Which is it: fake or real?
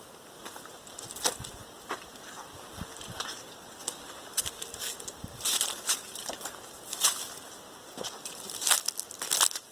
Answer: real